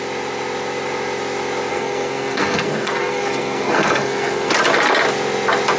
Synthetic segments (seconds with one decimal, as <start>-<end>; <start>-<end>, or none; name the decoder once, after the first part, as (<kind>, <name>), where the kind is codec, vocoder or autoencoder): 1.7-4.5 (codec, SNAC)